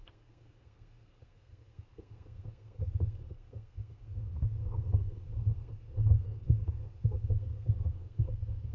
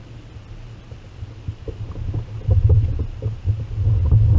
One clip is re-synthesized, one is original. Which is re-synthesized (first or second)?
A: first